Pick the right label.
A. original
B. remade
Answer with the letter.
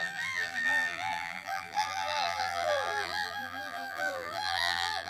B